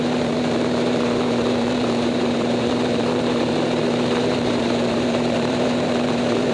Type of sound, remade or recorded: remade